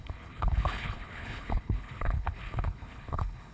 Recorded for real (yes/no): no